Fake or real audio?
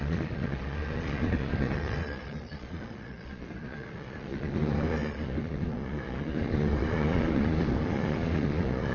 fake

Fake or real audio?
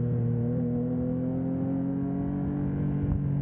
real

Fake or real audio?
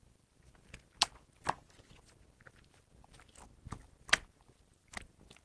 real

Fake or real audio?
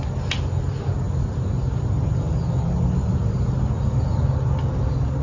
real